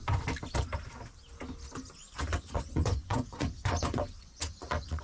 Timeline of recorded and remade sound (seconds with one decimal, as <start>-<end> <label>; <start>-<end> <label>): 0.0-2.0 recorded; 2.0-5.0 remade